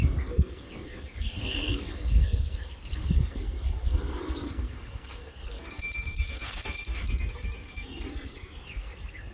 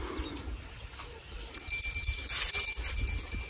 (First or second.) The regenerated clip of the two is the first